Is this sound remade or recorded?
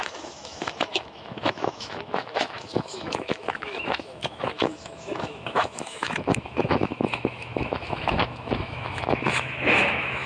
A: remade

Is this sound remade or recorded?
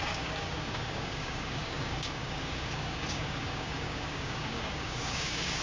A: remade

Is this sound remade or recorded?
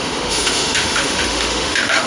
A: remade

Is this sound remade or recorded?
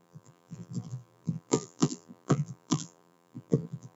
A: remade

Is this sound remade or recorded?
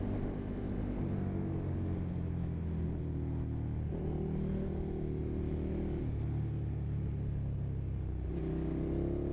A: recorded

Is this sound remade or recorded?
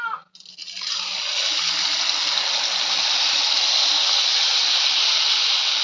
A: recorded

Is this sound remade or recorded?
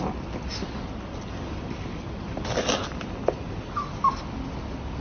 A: recorded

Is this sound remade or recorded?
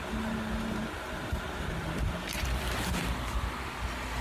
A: recorded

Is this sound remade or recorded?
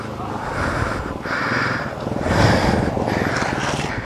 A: recorded